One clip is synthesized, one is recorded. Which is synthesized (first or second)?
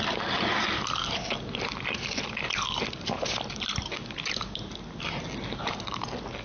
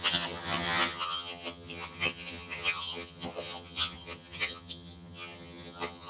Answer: second